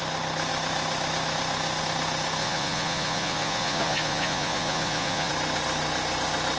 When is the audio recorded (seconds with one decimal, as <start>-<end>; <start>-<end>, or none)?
0.0-2.4; 5.3-6.6